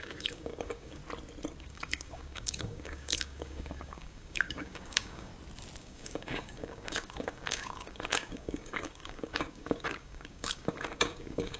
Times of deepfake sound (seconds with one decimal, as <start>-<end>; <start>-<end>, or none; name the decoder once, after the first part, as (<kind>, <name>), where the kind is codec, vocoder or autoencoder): 0.0-1.0 (codec, DAC); 1.6-5.3; 5.8-11.6